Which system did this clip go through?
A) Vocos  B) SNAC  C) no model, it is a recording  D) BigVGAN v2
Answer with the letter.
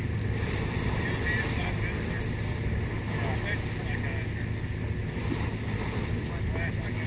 C